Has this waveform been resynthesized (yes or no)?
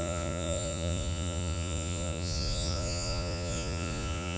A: yes